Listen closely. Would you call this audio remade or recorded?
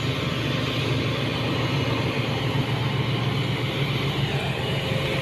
recorded